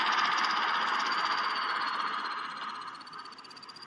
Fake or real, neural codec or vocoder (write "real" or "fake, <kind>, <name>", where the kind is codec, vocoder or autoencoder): real